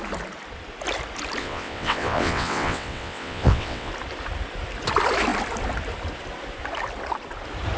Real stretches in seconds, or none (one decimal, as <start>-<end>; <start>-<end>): 0.0-1.4; 3.9-7.8